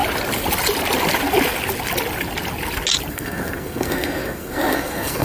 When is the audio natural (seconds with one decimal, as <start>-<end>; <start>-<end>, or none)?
0.0-3.1